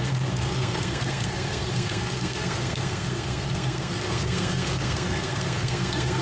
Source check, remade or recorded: remade